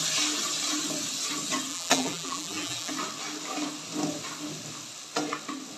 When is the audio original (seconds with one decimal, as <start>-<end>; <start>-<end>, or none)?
0.0-1.7; 2.9-5.8

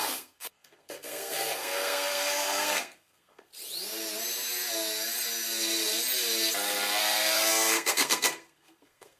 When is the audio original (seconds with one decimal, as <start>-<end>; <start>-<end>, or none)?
3.5-7.0

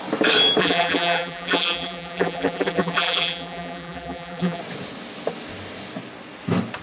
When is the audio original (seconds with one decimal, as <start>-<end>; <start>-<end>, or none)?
0.0-0.6; 4.6-6.8

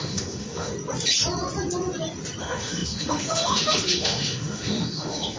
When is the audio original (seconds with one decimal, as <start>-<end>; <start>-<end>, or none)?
0.7-2.4